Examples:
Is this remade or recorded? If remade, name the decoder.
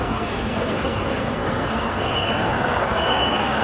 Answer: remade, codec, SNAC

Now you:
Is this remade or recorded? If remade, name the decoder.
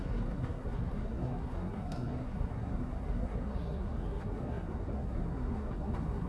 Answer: remade, codec, SNAC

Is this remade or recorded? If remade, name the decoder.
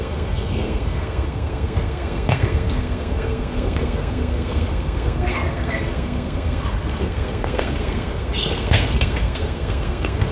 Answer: remade, codec, SNAC